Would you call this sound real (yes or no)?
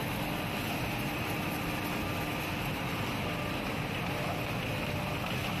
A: yes